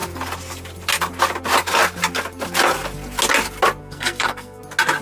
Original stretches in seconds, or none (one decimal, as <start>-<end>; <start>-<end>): 0.0-3.8; 4.6-5.0